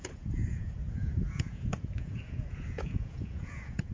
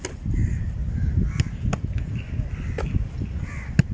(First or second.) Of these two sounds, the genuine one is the second